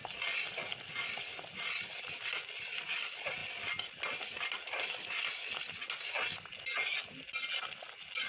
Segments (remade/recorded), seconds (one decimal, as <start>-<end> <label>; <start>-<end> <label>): 0.0-8.3 recorded